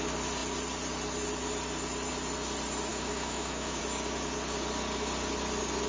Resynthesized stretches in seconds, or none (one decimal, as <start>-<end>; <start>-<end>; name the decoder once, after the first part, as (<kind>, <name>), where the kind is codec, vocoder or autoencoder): 2.9-3.8 (autoencoder, DAC-VAE)